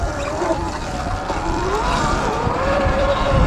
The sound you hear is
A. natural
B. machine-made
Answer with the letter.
B